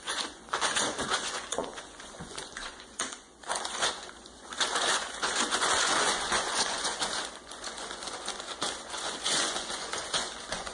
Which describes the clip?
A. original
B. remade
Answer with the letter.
B